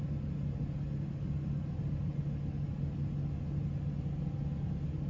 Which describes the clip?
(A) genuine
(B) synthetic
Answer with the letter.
A